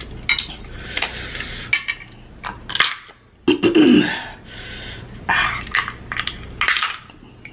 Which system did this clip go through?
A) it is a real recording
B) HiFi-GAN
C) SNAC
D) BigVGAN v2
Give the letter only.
A